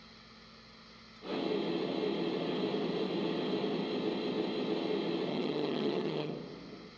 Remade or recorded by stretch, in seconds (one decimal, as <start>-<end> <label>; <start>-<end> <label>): 0.0-5.3 recorded; 5.3-6.3 remade; 6.3-7.0 recorded